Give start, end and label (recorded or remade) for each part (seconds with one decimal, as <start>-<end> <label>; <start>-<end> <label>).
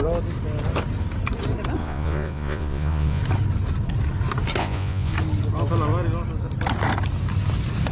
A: 0.0-1.8 recorded; 1.8-3.2 remade; 3.2-4.6 recorded; 4.6-5.1 remade; 5.1-7.9 recorded